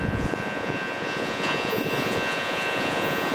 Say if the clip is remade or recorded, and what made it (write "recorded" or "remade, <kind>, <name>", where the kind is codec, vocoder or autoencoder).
remade, vocoder, Vocos